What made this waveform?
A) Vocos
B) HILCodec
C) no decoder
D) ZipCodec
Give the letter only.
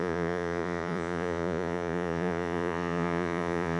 A